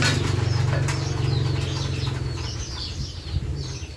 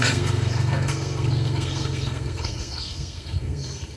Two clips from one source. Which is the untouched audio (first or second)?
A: first